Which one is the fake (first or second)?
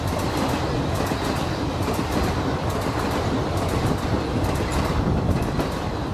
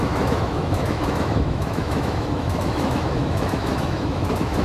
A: second